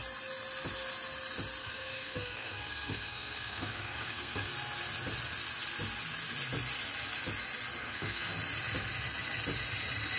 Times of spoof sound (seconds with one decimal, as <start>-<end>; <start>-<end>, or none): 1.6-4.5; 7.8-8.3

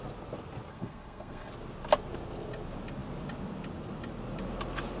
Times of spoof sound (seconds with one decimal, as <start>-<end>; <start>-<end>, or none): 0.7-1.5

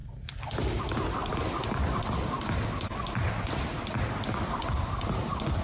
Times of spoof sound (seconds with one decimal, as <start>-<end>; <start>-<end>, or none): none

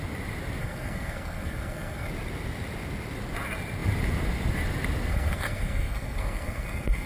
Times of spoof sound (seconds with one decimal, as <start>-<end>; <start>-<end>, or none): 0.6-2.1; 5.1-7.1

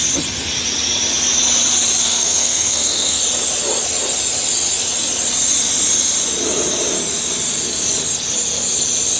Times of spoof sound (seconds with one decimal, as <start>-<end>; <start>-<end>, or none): 2.0-3.2

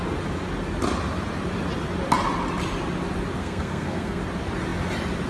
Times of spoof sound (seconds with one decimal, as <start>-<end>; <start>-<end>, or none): 3.4-4.2

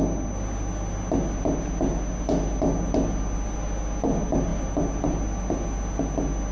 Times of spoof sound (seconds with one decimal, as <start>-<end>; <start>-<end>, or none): none

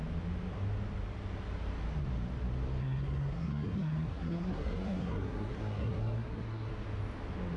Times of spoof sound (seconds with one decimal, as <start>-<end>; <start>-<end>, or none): 2.8-6.7